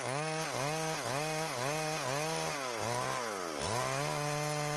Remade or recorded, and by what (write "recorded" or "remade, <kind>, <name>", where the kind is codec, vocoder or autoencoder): recorded